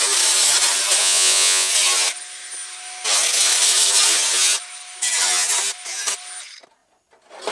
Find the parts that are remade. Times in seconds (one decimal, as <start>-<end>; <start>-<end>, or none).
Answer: 1.0-1.7